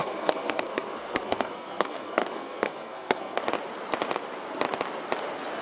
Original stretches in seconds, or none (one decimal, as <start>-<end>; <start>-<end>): 3.4-5.6